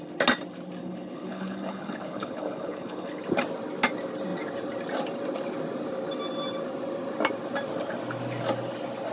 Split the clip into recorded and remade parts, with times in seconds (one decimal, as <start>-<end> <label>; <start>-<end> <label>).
0.0-0.8 recorded; 0.8-3.2 remade; 3.2-9.1 recorded

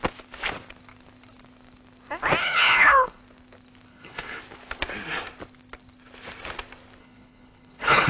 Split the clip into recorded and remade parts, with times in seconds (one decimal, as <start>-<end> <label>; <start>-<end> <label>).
0.0-2.4 recorded; 2.4-3.2 remade; 3.2-3.9 recorded; 3.9-4.4 remade; 4.4-7.0 recorded; 7.0-8.1 remade

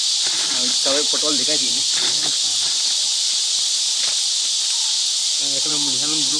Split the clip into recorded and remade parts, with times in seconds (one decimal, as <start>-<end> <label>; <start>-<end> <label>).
0.0-1.9 recorded; 1.9-2.4 remade; 2.4-6.4 recorded

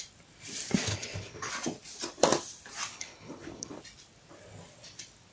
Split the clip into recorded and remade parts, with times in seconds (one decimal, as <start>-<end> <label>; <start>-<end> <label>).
0.0-0.9 recorded; 0.9-1.5 remade; 1.5-2.9 recorded; 2.9-3.8 remade; 3.8-5.3 recorded